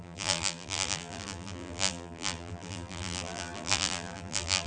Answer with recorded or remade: remade